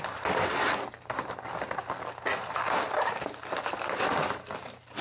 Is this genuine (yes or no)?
yes